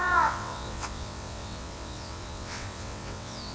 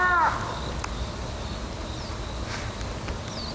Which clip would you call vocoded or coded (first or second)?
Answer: first